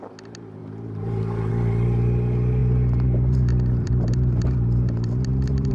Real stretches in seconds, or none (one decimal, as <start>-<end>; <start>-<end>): 0.0-0.6; 1.5-2.6

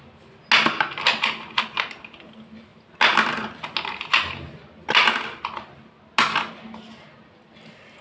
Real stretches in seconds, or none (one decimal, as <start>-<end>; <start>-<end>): 0.0-8.0

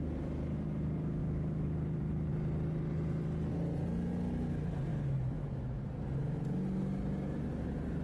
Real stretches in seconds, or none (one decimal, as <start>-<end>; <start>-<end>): 0.0-1.2; 2.3-4.9; 5.9-8.0

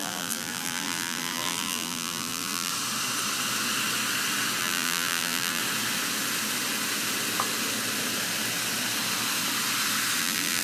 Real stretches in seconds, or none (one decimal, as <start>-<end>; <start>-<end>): 2.7-4.6; 5.6-10.2

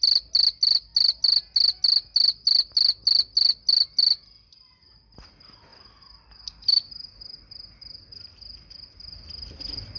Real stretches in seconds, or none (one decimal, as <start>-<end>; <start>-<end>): 0.0-10.0

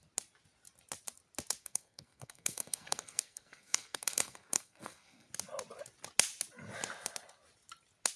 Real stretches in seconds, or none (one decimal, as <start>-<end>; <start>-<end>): 0.0-1.6; 5.3-8.2

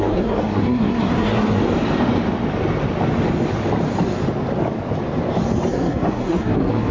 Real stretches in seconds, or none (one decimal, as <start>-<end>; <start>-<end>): 1.6-5.7

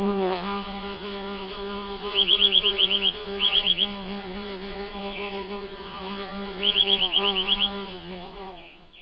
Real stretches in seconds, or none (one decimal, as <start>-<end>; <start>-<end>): none